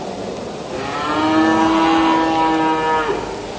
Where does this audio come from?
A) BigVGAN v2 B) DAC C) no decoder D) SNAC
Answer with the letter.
C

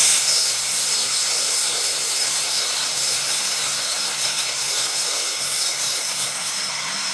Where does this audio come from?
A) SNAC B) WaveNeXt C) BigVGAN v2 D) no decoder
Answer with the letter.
A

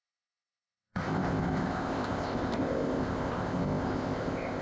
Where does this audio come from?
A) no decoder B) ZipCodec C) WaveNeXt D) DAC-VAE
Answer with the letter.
B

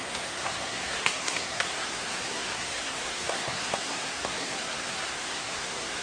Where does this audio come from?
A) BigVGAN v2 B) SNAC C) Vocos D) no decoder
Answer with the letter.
B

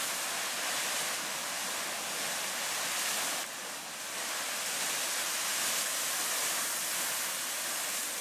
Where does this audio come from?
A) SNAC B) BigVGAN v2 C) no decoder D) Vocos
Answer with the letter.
C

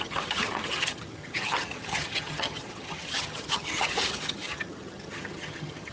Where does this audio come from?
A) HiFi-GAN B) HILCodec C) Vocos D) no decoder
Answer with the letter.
A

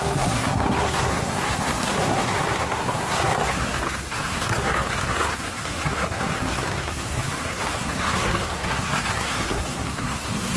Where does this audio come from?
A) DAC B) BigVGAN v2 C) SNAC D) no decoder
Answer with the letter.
C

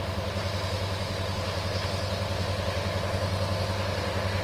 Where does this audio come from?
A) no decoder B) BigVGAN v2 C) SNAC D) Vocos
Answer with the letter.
A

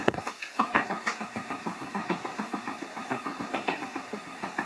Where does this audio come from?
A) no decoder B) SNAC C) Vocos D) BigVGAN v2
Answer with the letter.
B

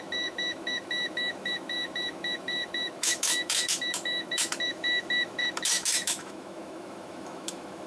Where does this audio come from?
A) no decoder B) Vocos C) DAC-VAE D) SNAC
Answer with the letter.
C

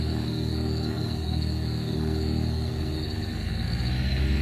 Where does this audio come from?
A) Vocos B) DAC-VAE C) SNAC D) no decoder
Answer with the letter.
C